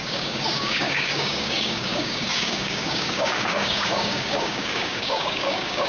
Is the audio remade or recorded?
remade